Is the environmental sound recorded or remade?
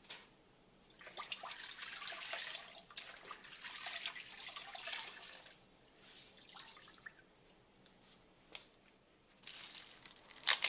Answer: recorded